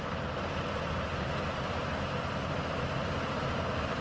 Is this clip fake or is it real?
real